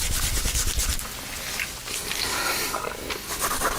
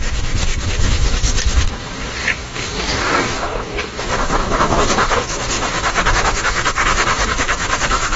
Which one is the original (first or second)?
first